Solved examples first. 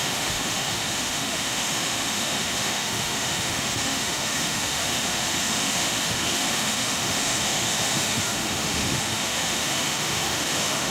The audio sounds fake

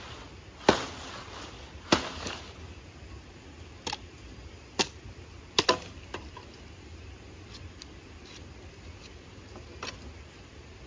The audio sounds real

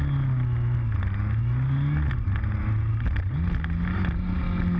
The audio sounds real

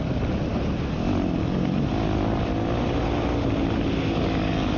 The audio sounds real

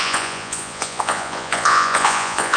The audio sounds fake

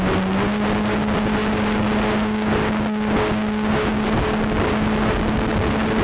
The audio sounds real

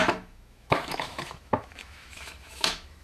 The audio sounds fake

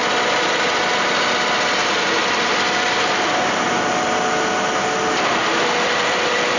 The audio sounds real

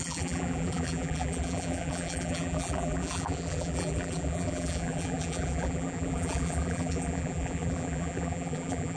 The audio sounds fake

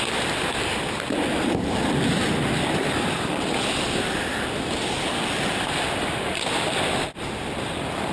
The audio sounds fake